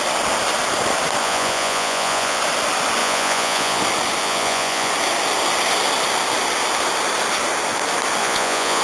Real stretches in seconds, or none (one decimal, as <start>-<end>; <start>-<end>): 0.0-1.2; 2.4-3.0; 3.8-4.2; 4.9-8.2